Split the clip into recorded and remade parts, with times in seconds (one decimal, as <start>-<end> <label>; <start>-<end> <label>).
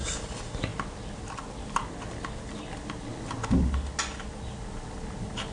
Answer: 0.0-5.5 recorded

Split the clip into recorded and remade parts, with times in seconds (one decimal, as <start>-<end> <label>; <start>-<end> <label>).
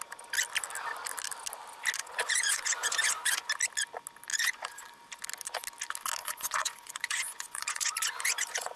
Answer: 0.0-2.0 recorded; 2.0-3.5 remade; 3.5-4.3 recorded; 4.3-4.9 remade; 4.9-6.2 recorded; 6.2-8.8 remade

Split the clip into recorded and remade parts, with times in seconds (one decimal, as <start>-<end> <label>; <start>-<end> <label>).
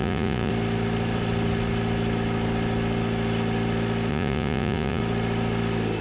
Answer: 0.0-0.5 remade; 0.5-4.1 recorded; 4.1-5.0 remade; 5.0-6.0 recorded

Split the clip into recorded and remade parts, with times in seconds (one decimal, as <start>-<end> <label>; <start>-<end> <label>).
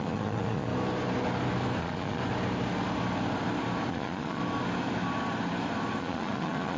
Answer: 0.0-0.7 remade; 0.7-1.8 recorded; 1.8-2.2 remade; 2.2-3.9 recorded; 3.9-4.4 remade; 4.4-6.0 recorded; 6.0-6.8 remade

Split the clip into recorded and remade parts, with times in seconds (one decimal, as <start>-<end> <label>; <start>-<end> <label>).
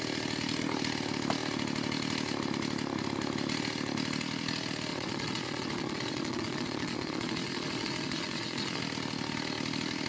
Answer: 0.0-4.9 recorded; 4.9-8.8 remade; 8.8-10.1 recorded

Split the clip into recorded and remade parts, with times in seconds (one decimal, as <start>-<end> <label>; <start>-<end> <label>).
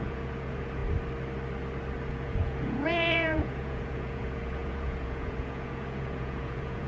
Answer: 0.0-0.8 remade; 0.8-2.1 recorded; 2.1-6.9 remade